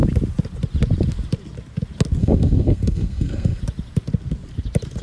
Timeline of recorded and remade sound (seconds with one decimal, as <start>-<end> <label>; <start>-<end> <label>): 0.0-2.2 recorded; 2.2-3.6 remade; 3.6-5.0 recorded